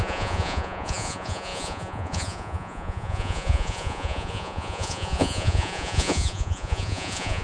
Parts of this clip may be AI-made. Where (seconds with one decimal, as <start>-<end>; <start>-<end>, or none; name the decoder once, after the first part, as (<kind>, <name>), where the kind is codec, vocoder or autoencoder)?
0.0-7.4 (vocoder, Vocos)